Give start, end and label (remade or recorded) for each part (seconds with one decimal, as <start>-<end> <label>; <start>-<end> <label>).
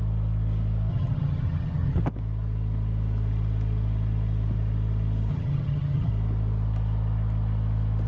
0.0-0.9 recorded; 0.9-2.0 remade; 2.0-5.3 recorded; 5.3-6.1 remade; 6.1-8.1 recorded